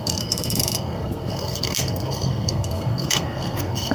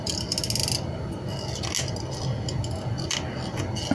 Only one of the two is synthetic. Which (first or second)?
first